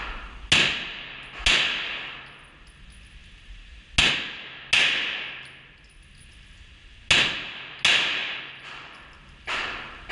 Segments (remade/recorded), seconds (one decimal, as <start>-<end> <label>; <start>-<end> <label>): 0.0-8.2 recorded; 8.2-9.0 remade; 9.0-10.1 recorded